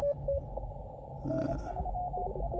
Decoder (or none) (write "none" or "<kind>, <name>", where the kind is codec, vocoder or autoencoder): none